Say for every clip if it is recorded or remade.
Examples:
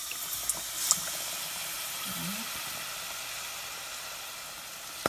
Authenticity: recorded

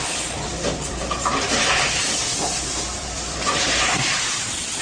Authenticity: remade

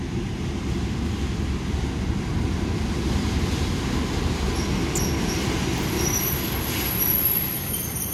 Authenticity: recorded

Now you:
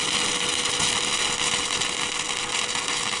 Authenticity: recorded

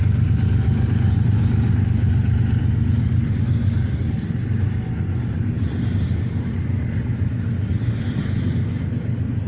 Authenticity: recorded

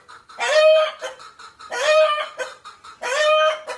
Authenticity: remade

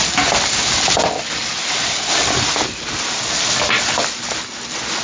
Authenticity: recorded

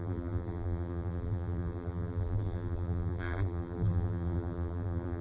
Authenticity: remade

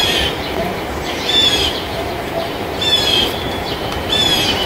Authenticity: remade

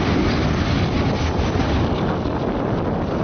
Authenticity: recorded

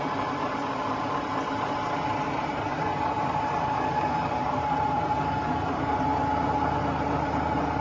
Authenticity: remade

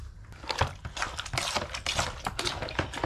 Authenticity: recorded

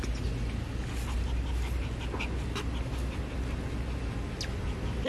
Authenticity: recorded